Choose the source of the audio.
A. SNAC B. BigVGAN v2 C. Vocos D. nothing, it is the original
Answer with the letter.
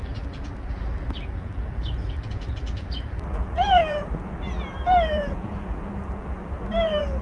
B